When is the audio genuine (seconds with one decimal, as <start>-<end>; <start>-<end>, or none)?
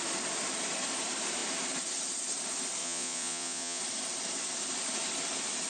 0.0-2.8; 3.8-5.7